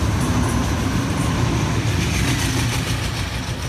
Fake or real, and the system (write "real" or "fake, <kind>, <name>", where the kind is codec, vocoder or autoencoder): real